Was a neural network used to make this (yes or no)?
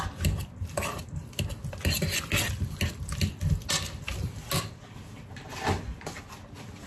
no